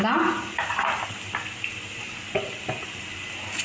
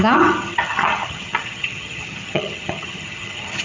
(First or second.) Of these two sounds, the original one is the first